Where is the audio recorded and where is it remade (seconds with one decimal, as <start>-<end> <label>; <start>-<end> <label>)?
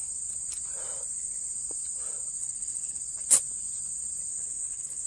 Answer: 0.0-2.4 recorded; 2.4-3.0 remade; 3.0-4.3 recorded; 4.3-5.1 remade